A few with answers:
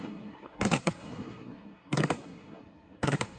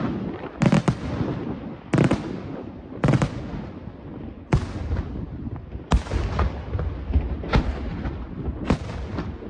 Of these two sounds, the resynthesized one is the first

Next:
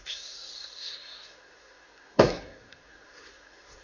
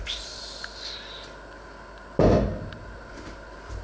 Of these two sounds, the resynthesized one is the first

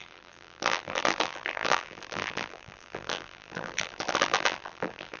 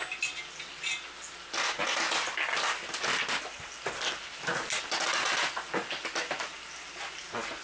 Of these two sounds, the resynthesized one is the first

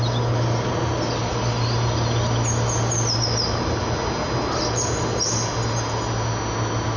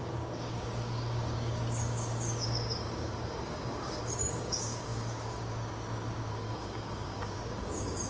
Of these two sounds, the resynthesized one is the second